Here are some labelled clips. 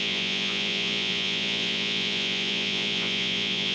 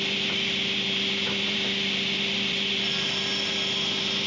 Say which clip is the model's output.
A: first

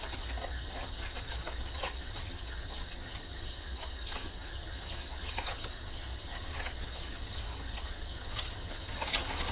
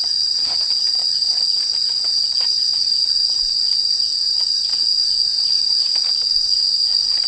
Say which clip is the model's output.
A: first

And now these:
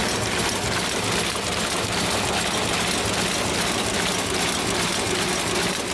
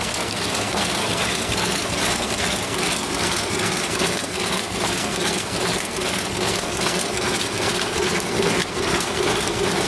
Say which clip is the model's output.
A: second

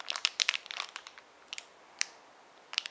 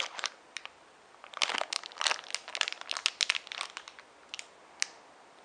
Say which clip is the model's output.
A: first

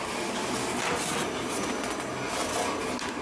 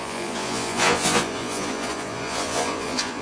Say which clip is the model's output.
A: second